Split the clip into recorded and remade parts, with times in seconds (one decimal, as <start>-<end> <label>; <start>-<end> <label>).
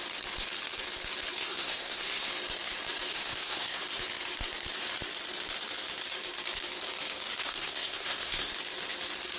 0.0-1.4 recorded; 1.4-2.3 remade; 2.3-3.1 recorded; 3.1-3.8 remade; 3.8-7.4 recorded; 7.4-8.5 remade; 8.5-9.4 recorded